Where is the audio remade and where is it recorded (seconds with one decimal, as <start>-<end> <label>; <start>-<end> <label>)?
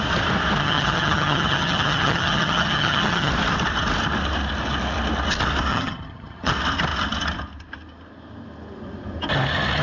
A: 0.0-0.6 recorded; 0.6-3.3 remade; 3.3-5.7 recorded; 5.7-6.5 remade; 6.5-9.8 recorded